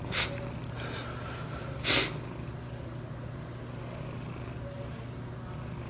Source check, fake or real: real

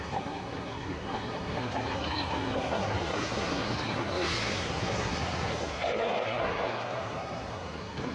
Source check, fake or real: fake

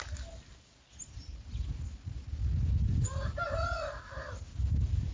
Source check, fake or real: real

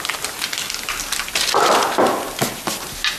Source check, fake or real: real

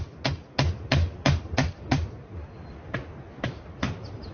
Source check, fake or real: real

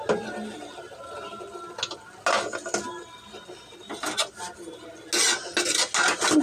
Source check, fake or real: real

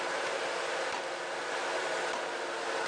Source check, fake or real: real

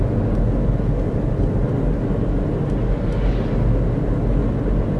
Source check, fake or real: real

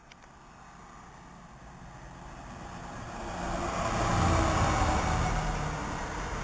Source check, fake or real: real